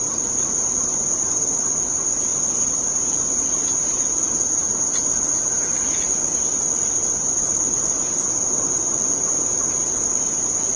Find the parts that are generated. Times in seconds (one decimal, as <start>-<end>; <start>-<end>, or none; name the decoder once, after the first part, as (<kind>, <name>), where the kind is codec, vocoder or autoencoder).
none